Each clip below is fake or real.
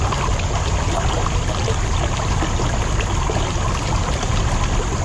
real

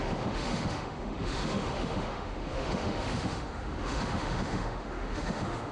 fake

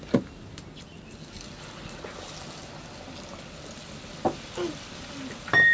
real